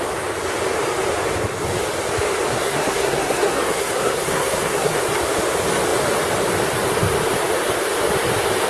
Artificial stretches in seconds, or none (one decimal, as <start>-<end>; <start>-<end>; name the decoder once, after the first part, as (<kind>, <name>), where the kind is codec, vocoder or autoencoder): 2.5-5.0 (codec, SNAC)